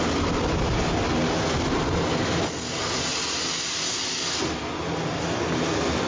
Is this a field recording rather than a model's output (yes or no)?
yes